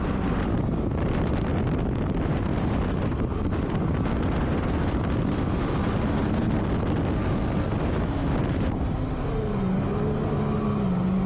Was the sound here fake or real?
real